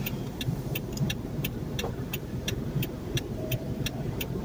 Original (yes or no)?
no